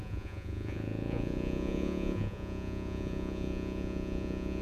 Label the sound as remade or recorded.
remade